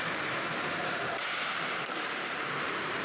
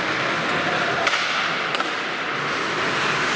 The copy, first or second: first